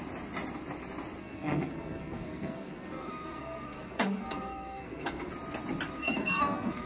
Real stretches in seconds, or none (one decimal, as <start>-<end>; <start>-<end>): 0.0-1.2; 5.3-6.0